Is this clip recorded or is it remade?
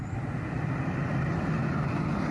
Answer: recorded